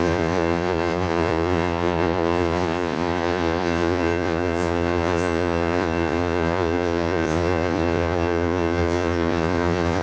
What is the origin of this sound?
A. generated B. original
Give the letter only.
A